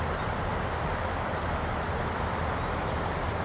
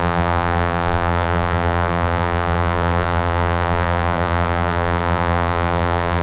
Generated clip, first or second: second